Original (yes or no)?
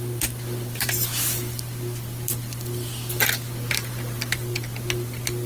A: yes